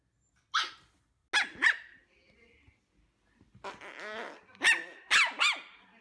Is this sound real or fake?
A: real